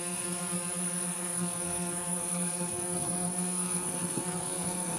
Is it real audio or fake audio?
fake